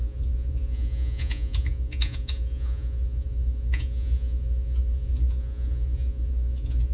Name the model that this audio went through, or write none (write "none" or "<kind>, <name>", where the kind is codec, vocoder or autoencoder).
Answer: vocoder, Vocos